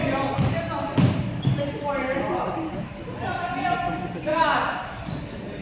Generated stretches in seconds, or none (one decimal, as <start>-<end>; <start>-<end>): 0.0-3.4; 4.3-5.0